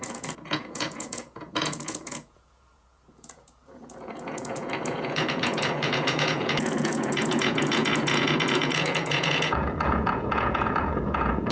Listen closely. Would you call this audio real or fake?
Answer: fake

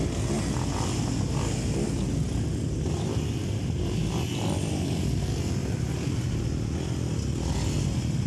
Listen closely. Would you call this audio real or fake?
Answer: real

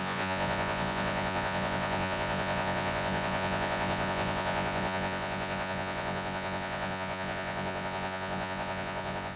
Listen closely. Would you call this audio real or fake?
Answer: fake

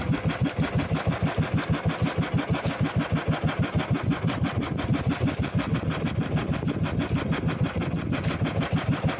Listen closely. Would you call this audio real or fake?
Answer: real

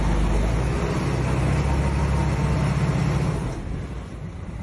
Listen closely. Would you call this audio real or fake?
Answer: real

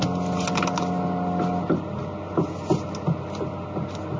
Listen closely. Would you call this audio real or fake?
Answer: real